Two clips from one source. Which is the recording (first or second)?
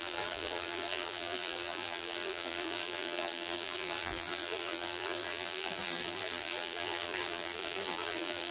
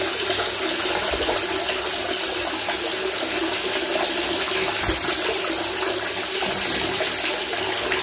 second